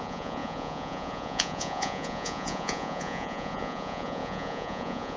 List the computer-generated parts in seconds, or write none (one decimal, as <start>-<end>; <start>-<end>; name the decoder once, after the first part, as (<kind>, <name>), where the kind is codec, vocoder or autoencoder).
0.0-5.2 (vocoder, Vocos)